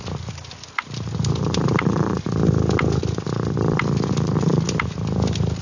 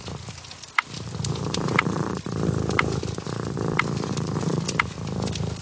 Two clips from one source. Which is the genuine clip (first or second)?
first